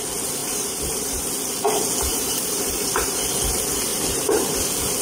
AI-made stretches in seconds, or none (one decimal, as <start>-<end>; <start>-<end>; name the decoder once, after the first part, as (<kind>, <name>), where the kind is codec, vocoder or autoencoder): 0.4-1.3 (vocoder, BigVGAN v2); 2.1-3.2; 3.9-4.6